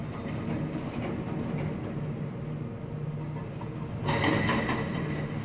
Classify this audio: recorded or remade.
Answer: recorded